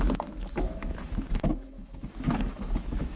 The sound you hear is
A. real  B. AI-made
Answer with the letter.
B